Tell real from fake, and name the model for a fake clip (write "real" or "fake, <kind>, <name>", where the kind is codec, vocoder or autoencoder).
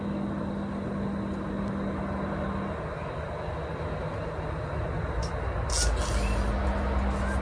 real